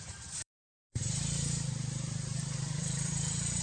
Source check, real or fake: fake